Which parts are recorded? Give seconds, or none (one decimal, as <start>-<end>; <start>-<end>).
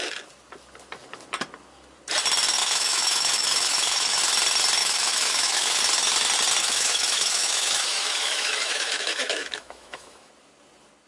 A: 0.0-2.6; 4.2-4.8; 5.8-6.6; 10.3-11.1